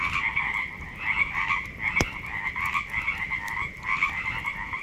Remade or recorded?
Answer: recorded